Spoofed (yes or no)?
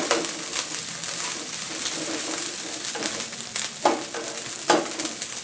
no